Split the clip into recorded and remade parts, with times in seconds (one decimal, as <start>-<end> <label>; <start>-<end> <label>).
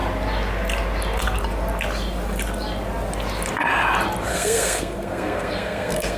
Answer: 0.0-4.3 recorded; 4.3-6.2 remade